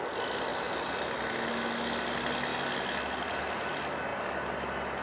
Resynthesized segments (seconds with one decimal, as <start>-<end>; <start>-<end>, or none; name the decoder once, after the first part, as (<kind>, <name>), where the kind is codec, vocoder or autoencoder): none